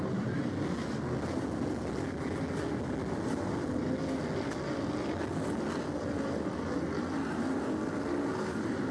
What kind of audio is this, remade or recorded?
recorded